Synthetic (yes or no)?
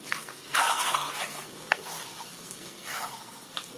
yes